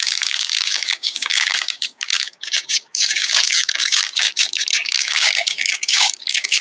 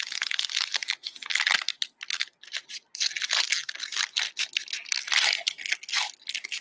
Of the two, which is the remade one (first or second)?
first